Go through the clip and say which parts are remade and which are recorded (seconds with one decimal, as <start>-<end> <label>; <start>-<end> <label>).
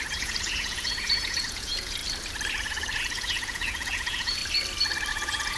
0.0-2.0 remade; 2.0-2.5 recorded; 2.5-4.4 remade; 4.4-5.1 recorded; 5.1-5.6 remade